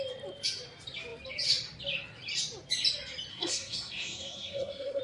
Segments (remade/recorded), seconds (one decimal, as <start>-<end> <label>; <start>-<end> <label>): 0.0-3.3 recorded; 3.3-5.0 remade